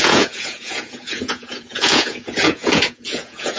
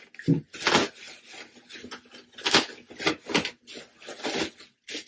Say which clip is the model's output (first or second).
first